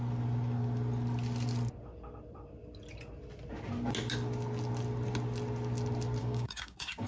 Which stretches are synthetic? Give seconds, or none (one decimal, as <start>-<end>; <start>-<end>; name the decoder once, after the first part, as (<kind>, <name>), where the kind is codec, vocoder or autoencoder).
6.2-7.1 (codec, DAC)